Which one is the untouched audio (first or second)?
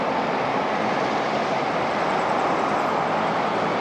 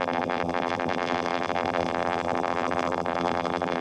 first